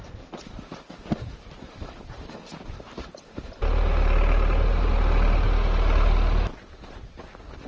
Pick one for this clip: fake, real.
fake